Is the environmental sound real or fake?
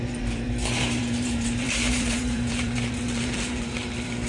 fake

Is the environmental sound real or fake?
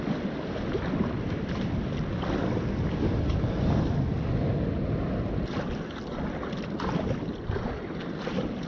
real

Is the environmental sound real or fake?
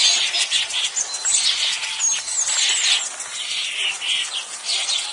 real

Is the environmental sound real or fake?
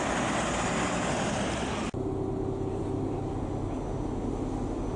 real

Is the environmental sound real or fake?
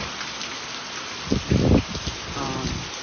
real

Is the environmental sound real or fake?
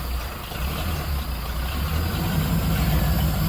real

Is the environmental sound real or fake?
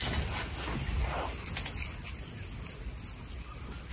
real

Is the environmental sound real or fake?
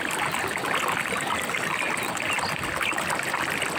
real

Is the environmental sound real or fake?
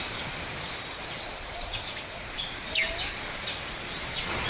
real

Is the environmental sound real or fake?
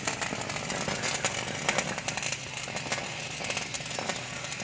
real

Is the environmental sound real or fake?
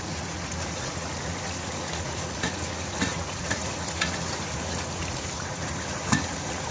fake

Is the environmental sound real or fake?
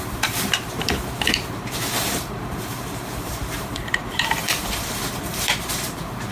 fake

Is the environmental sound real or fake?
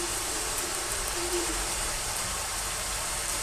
fake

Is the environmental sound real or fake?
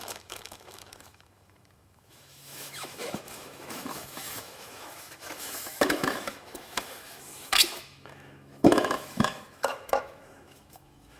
fake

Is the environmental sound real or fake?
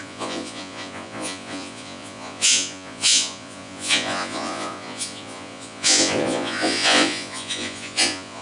fake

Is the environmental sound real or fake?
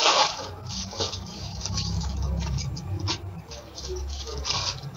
fake